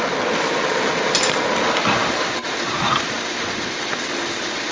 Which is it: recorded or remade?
recorded